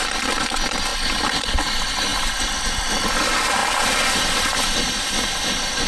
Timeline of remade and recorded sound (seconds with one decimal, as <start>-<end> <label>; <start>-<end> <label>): 0.0-0.9 recorded; 0.9-1.5 remade; 1.5-2.1 recorded; 2.1-3.1 remade; 3.1-5.9 recorded